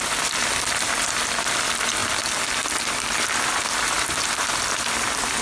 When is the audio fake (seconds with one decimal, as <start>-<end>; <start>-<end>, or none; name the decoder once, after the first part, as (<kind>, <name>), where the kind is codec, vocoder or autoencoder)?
0.0-2.0 (vocoder, BigVGAN v2); 3.7-5.4